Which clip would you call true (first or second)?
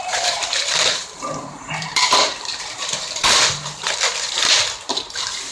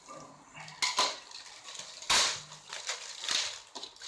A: second